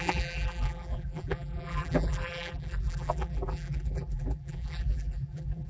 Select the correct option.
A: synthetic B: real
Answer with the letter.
A